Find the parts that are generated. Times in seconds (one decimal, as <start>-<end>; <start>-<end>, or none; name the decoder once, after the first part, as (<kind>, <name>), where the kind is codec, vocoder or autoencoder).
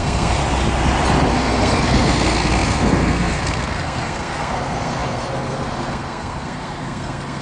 0.0-0.4 (codec, SNAC); 1.3-7.4